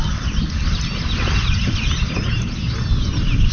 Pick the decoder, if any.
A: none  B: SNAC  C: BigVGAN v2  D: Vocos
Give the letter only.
A